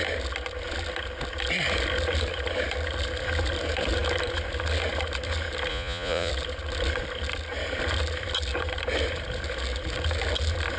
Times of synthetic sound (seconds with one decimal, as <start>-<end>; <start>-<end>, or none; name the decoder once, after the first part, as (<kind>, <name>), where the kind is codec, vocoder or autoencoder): 5.7-6.3 (vocoder, Vocos)